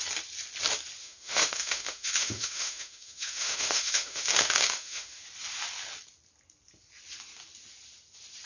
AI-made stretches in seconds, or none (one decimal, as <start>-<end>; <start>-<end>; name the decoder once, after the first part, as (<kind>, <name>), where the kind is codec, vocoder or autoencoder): 1.0-5.2 (autoencoder, DAC-VAE)